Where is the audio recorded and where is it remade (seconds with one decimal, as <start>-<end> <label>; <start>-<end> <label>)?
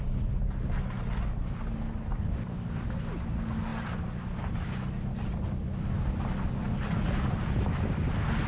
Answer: 0.0-8.5 recorded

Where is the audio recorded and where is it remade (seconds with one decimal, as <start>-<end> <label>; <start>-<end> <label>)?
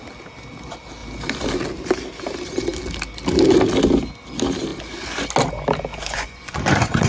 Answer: 0.0-5.9 recorded; 5.9-7.1 remade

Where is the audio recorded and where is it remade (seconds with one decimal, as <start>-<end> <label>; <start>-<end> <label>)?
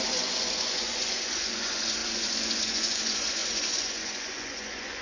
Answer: 0.0-5.0 remade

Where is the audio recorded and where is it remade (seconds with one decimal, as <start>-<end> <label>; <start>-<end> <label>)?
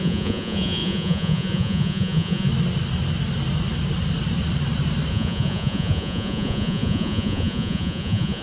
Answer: 0.0-2.5 remade; 2.5-5.1 recorded; 5.1-8.4 remade